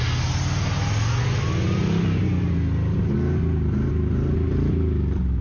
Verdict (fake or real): real